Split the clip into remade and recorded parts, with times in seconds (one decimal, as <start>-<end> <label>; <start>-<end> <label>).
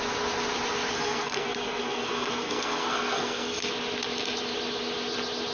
0.0-0.9 recorded; 0.9-3.7 remade; 3.7-5.5 recorded